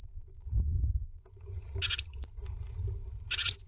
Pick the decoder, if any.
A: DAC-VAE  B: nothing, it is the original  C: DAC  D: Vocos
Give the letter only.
B